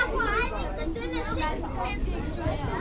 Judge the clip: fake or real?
real